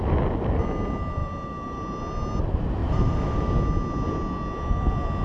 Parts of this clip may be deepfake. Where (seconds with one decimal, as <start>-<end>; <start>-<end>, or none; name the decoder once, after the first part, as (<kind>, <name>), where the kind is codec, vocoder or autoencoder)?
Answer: 1.2-2.0 (vocoder, BigVGAN v2); 2.8-3.4